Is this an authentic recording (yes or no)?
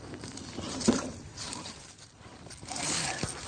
yes